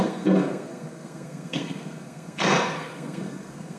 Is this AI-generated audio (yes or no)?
yes